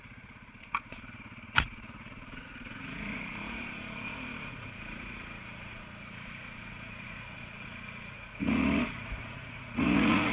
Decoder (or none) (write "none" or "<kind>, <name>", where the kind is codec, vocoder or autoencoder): vocoder, Vocos